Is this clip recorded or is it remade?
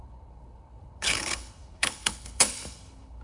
remade